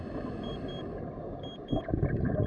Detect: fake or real real